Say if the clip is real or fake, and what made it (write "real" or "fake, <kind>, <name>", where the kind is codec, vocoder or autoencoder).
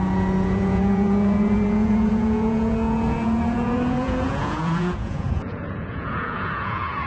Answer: fake, vocoder, Vocos